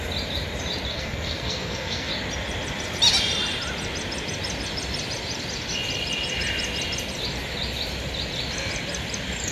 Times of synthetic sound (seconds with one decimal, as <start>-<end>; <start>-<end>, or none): 0.9-2.1